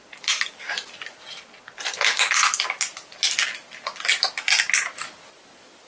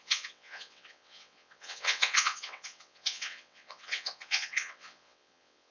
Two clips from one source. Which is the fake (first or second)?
second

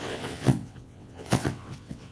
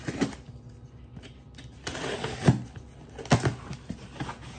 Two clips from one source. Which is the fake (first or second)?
first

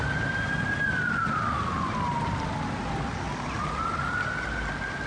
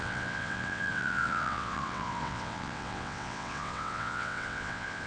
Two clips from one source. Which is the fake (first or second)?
second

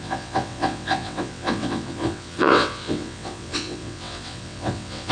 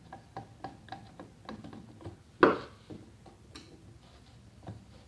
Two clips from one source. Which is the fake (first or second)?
first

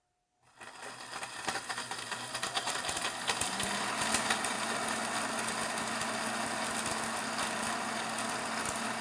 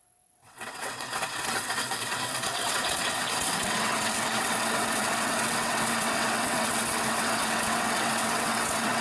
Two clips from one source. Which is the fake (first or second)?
second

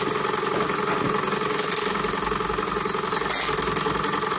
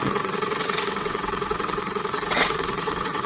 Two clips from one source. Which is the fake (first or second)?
second